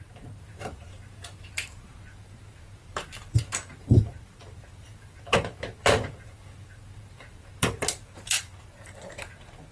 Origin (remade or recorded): remade